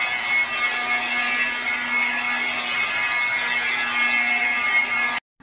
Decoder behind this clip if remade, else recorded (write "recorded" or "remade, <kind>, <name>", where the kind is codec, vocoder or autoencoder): recorded